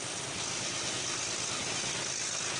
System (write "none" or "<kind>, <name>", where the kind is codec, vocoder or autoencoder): none